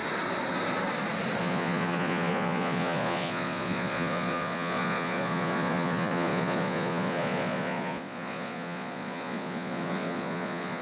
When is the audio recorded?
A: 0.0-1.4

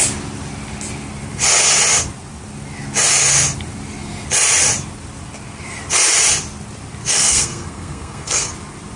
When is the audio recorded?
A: 0.0-7.1; 8.5-9.0

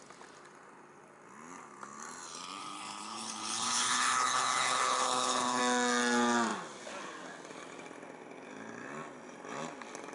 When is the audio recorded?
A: 0.0-2.6; 5.6-10.1

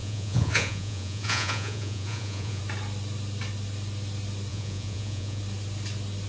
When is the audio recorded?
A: 2.6-4.5; 5.4-6.3